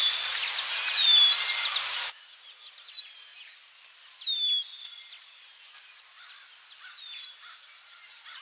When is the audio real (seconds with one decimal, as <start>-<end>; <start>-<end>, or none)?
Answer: 0.0-8.4